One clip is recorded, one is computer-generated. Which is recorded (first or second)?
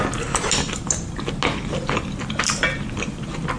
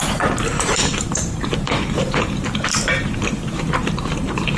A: first